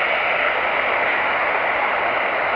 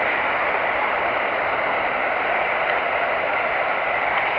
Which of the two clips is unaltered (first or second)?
first